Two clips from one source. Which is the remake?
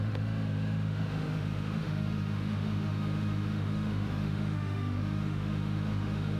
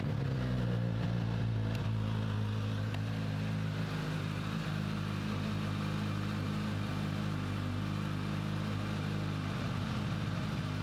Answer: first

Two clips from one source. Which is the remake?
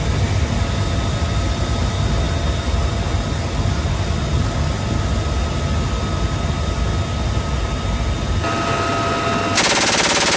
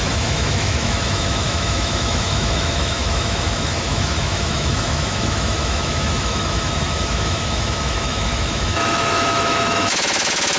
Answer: second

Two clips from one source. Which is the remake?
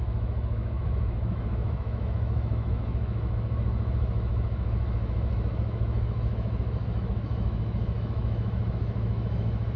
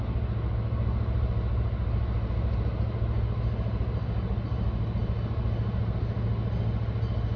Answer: first